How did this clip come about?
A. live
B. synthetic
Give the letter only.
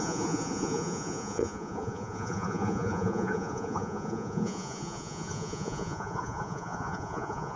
B